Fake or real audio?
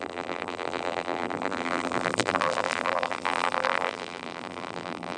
fake